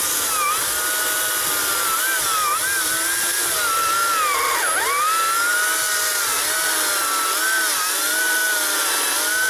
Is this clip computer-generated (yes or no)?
no